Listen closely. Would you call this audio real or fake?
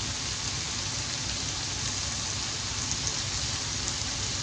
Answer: real